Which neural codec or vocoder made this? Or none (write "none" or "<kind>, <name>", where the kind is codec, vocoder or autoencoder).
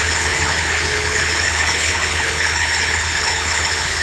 codec, HILCodec